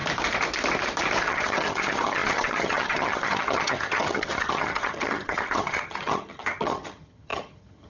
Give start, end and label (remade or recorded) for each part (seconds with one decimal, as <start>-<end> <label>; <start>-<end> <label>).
0.0-1.2 recorded; 1.2-7.9 remade